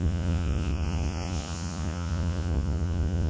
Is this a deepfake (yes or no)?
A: yes